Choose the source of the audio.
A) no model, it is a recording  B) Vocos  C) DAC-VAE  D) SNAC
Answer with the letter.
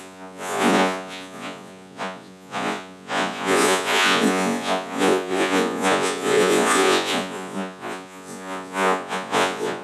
B